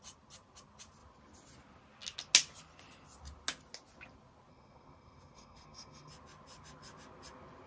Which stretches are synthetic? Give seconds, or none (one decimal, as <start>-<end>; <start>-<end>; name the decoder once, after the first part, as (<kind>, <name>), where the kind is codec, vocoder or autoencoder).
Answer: 4.5-6.1 (codec, SNAC)